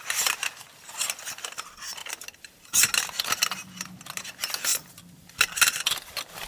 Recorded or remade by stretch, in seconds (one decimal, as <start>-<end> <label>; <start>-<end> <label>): 0.0-6.5 recorded